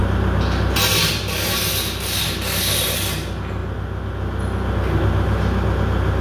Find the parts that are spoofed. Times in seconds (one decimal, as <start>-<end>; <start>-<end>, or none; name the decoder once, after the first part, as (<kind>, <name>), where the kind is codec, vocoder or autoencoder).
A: none